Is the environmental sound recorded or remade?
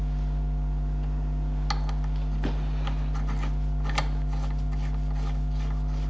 recorded